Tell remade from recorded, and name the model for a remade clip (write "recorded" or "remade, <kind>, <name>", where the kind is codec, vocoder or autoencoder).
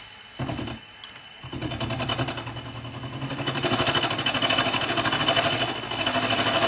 recorded